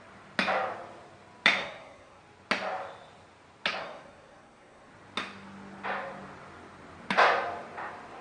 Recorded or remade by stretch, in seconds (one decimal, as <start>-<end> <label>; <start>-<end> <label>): 0.0-1.6 recorded; 1.6-2.2 remade; 2.2-3.8 recorded; 3.8-4.9 remade; 4.9-8.2 recorded